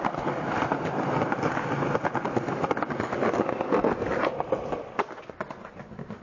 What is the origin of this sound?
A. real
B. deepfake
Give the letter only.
A